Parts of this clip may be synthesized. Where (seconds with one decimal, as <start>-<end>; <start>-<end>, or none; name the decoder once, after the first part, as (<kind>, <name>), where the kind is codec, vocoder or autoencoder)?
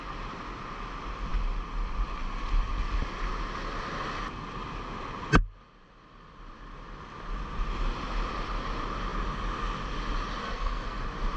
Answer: 10.4-11.0 (codec, SNAC)